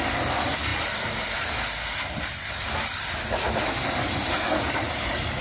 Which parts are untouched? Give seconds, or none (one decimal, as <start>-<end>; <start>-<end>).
0.0-5.4